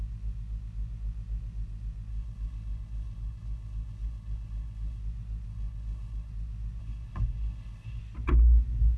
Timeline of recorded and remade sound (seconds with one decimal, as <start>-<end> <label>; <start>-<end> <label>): 0.0-2.1 recorded; 2.1-5.0 remade; 5.0-5.5 recorded; 5.5-6.3 remade; 6.3-6.8 recorded; 6.8-8.0 remade; 8.0-9.0 recorded